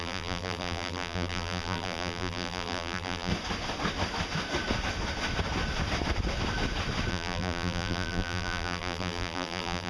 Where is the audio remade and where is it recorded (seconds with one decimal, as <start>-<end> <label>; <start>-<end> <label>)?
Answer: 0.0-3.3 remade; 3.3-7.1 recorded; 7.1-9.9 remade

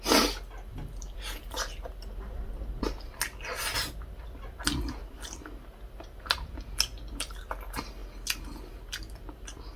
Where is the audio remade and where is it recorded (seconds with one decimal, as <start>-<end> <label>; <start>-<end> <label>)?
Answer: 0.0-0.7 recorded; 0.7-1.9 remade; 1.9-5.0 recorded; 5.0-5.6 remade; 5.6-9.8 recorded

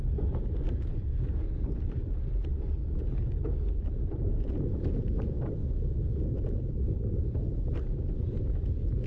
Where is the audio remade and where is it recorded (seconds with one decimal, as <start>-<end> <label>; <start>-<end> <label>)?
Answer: 0.0-2.8 remade; 2.8-3.9 recorded; 3.9-5.6 remade; 5.6-6.2 recorded; 6.2-9.1 remade

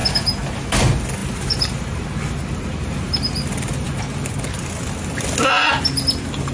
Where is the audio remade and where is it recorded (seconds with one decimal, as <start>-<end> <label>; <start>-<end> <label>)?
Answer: 0.0-1.2 recorded; 1.2-4.0 remade; 4.0-6.5 recorded

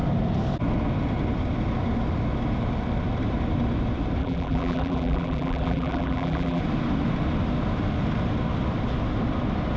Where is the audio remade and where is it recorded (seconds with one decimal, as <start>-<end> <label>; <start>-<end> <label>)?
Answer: 0.0-4.2 recorded; 4.2-6.6 remade; 6.6-9.8 recorded

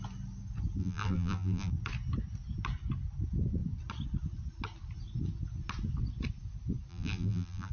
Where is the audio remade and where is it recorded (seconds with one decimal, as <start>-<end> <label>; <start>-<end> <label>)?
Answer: 0.0-0.8 recorded; 0.8-1.7 remade; 1.7-6.9 recorded; 6.9-7.7 remade

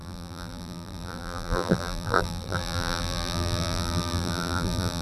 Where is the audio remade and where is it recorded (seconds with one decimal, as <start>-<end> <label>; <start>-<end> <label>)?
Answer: 0.0-5.0 remade

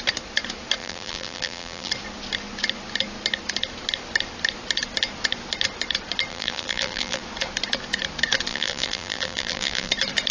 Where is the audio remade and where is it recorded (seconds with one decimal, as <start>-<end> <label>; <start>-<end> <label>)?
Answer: 0.0-0.8 recorded; 0.8-1.9 remade; 1.9-6.3 recorded; 6.3-7.2 remade; 7.2-8.5 recorded; 8.5-9.9 remade; 9.9-10.3 recorded